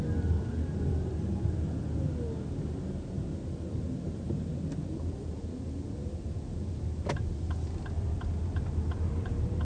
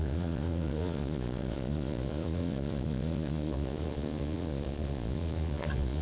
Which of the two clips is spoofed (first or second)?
second